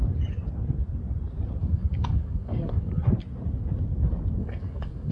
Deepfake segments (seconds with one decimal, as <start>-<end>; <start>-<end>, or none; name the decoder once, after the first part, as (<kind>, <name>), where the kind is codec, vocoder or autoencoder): 1.6-3.0 (codec, DAC); 4.4-5.1